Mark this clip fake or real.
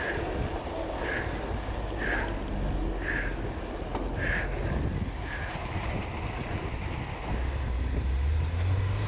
real